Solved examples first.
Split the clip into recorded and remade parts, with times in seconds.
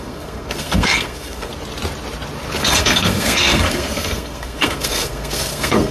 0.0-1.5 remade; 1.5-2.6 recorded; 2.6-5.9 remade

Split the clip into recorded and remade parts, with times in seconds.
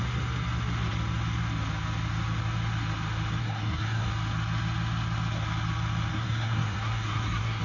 0.0-3.4 recorded; 3.4-4.1 remade; 4.1-6.1 recorded; 6.1-7.6 remade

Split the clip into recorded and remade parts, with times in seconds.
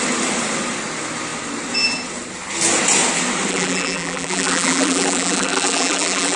0.0-3.5 recorded; 3.5-6.4 remade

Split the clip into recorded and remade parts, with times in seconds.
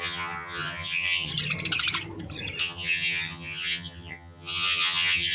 0.0-1.3 remade; 1.3-2.6 recorded; 2.6-5.3 remade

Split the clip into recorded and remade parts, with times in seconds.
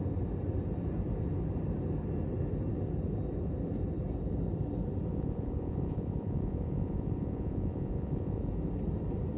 0.0-5.1 recorded; 5.1-8.5 remade; 8.5-9.4 recorded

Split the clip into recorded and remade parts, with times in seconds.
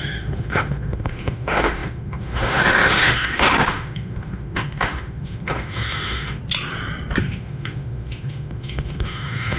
0.0-6.4 remade; 6.4-7.2 recorded; 7.2-9.6 remade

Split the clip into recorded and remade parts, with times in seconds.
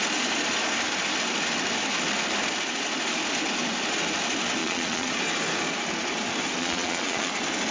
0.0-4.6 recorded; 4.6-5.1 remade; 5.1-6.6 recorded; 6.6-7.3 remade; 7.3-7.7 recorded